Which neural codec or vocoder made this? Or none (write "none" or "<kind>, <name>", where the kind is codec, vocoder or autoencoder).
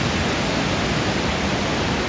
none